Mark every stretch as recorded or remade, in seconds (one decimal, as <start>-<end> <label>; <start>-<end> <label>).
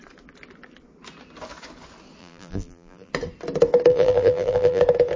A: 0.0-2.2 recorded; 2.2-3.1 remade; 3.1-3.9 recorded; 3.9-4.8 remade; 4.8-5.2 recorded